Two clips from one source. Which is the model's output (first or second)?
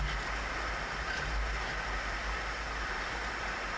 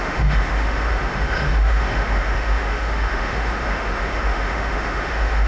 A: second